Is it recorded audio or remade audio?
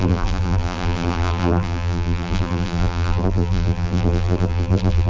remade